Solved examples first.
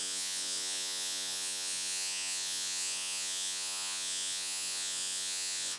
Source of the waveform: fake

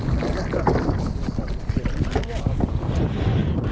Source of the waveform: real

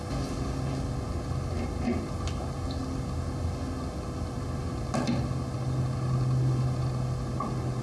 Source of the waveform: real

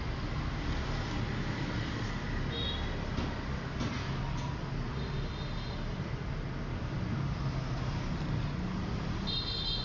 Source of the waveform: real